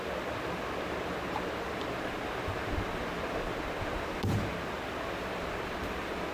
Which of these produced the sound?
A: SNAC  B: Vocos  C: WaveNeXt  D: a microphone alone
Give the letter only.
D